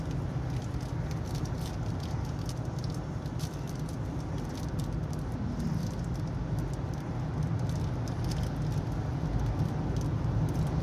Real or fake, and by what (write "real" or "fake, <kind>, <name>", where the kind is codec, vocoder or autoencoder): real